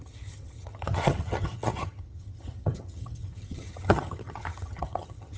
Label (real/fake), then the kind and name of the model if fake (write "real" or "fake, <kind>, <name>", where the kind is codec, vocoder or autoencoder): fake, vocoder, HiFi-GAN